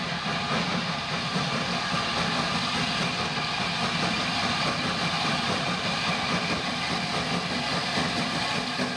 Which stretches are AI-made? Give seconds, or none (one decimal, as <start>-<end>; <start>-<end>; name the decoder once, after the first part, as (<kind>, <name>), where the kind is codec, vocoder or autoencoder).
0.7-1.4 (vocoder, BigVGAN v2)